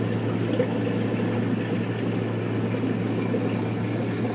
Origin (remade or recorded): recorded